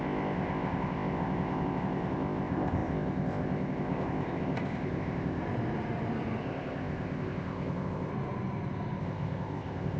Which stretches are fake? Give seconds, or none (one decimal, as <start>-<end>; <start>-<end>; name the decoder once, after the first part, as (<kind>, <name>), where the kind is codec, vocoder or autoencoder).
0.0-5.4 (codec, ZipCodec); 6.4-8.1; 9.0-10.0